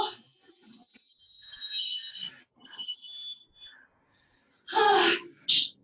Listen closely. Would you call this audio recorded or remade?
recorded